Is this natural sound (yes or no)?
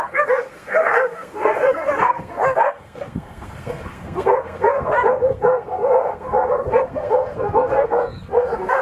no